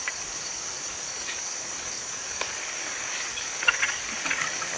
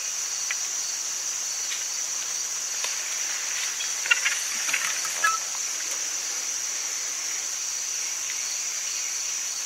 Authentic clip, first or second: second